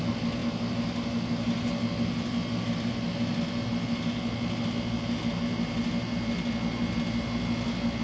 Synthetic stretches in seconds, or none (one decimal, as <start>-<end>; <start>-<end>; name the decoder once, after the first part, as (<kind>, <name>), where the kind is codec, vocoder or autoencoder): none